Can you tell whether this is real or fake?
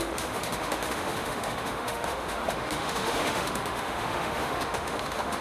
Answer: fake